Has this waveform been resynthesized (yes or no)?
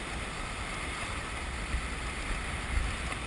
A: no